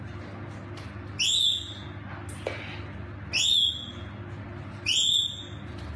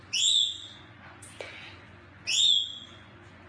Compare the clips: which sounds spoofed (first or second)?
second